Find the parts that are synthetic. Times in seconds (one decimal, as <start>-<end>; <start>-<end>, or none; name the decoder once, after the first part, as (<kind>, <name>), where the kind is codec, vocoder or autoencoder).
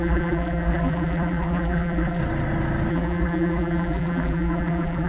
0.0-2.2 (vocoder, BigVGAN v2); 2.9-5.1